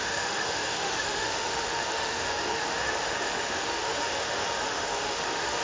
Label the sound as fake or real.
fake